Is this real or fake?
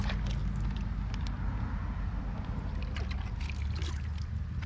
real